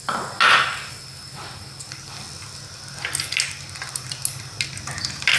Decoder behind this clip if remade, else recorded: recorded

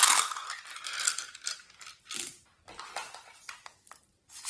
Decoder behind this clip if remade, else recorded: recorded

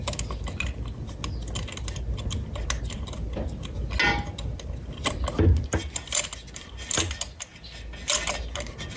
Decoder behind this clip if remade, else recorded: recorded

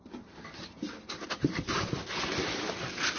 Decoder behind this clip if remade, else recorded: recorded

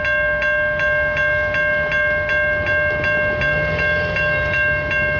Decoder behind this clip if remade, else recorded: recorded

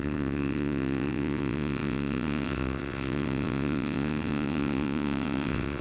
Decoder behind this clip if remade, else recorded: remade, vocoder, WaveNeXt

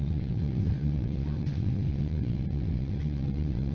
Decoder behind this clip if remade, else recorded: remade, vocoder, WaveNeXt